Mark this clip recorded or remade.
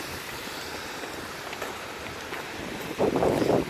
recorded